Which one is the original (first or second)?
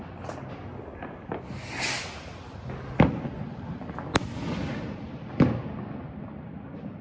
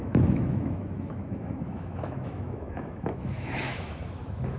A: first